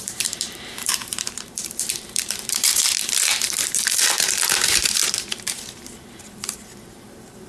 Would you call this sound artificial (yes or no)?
yes